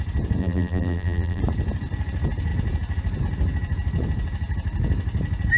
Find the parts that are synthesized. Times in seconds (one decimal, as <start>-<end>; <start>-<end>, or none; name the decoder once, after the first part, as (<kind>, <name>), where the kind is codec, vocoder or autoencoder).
0.4-1.4 (vocoder, BigVGAN v2)